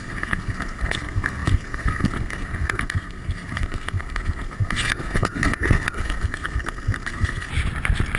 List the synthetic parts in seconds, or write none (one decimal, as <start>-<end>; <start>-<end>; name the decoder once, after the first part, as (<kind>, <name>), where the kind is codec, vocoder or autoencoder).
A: 0.0-7.5 (codec, SNAC)